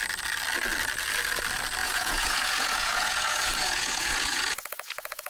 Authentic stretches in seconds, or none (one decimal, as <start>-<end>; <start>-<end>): 0.0-1.8